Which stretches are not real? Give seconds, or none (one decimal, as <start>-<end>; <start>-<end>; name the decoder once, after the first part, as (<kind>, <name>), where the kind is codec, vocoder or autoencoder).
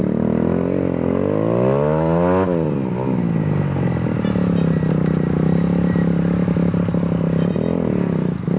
none